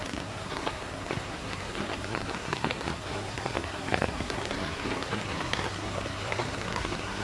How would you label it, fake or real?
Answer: fake